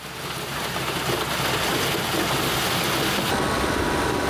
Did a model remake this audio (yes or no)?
no